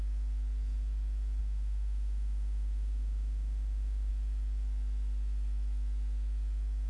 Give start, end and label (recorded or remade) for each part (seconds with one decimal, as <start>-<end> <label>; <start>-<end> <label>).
0.0-1.4 recorded; 1.4-4.1 remade; 4.1-6.9 recorded